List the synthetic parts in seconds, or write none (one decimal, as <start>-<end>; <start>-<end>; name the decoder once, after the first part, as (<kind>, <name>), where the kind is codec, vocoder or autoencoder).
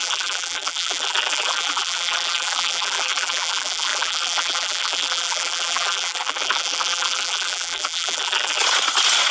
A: 0.0-8.6 (vocoder, BigVGAN v2)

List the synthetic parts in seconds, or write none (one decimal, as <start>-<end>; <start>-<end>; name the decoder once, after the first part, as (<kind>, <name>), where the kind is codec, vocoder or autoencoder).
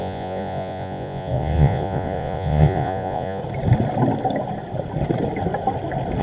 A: 0.0-3.4 (vocoder, Vocos)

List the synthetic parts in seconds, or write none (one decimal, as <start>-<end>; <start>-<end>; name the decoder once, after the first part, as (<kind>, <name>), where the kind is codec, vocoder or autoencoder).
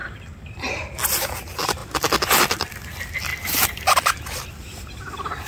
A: 0.0-3.3 (vocoder, BigVGAN v2); 4.5-5.5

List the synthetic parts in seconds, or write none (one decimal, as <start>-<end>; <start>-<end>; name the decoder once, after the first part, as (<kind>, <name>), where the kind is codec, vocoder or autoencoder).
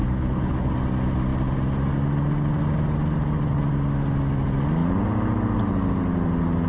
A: 0.0-0.7 (codec, HILCodec)